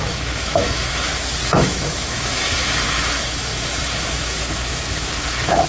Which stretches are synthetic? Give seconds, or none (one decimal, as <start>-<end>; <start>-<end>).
0.0-1.1; 1.6-5.7